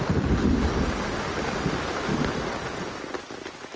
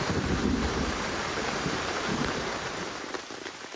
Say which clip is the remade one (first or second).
second